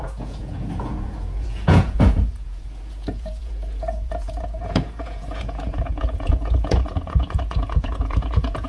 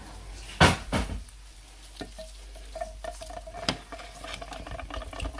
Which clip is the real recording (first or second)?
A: second